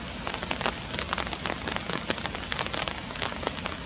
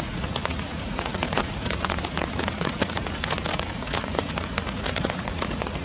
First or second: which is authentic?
first